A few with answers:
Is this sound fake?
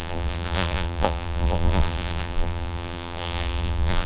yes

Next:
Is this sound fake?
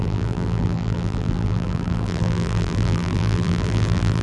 yes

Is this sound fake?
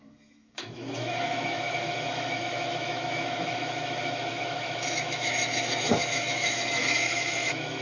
yes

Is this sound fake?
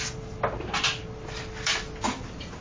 no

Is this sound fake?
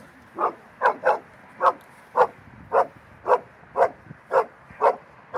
no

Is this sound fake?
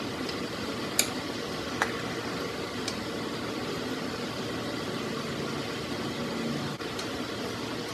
no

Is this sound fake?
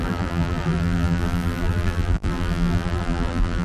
yes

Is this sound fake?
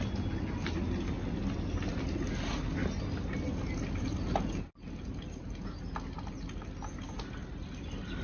no